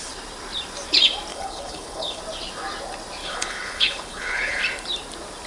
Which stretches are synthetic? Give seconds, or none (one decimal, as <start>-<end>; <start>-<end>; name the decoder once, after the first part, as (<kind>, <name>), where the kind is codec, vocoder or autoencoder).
1.3-2.2 (codec, HILCodec); 3.2-4.6